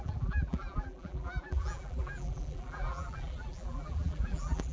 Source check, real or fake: fake